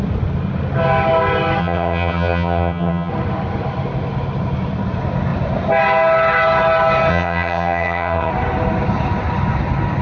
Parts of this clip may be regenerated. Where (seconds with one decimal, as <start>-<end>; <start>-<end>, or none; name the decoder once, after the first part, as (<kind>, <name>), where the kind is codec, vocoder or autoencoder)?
1.6-3.1 (vocoder, HiFi-GAN); 7.1-8.3